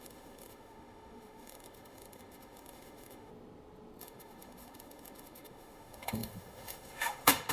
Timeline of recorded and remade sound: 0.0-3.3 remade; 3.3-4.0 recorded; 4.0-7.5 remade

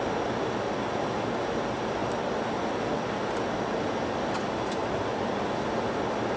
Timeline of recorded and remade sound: 0.0-6.4 recorded